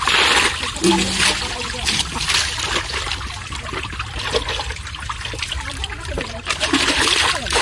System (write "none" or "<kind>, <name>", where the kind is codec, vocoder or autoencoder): none